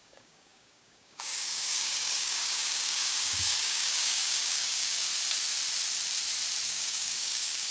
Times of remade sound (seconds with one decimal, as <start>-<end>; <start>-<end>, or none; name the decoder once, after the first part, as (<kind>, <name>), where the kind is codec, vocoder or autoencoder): 0.0-5.1 (codec, DAC); 6.7-7.7